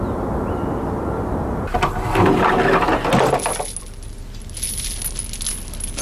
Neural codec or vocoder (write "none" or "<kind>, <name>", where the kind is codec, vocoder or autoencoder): none